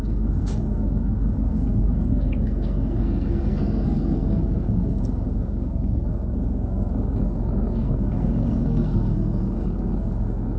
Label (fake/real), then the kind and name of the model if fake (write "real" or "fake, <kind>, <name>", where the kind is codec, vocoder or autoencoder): fake, codec, SNAC